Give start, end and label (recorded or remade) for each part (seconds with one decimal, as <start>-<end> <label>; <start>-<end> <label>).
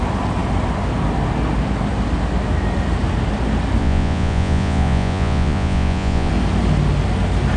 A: 0.0-3.8 recorded; 3.8-6.3 remade; 6.3-7.6 recorded